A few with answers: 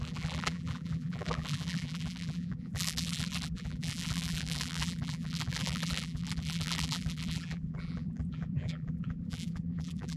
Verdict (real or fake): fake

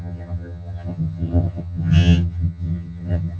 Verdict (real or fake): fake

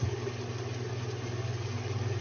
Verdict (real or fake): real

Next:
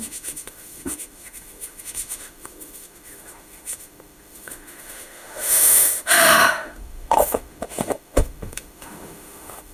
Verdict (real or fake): fake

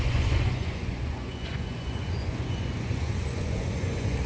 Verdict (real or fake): fake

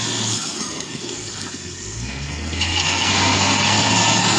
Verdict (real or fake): fake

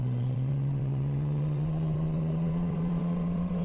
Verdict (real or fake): fake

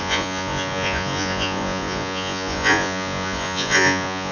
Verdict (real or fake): fake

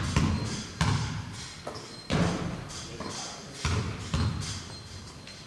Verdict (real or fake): real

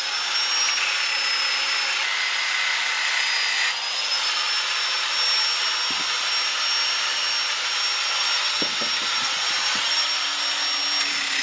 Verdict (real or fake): real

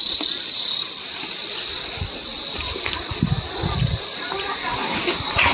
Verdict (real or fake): fake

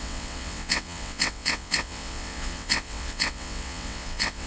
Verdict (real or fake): fake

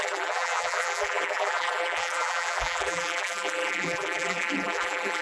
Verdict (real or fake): fake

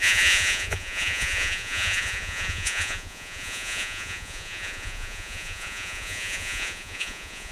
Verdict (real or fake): fake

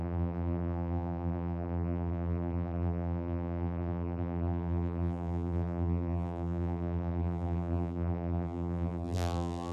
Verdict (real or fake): fake